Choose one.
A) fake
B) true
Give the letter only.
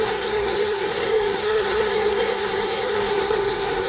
A